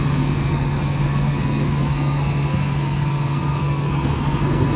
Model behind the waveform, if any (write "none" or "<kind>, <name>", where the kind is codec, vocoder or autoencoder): codec, SNAC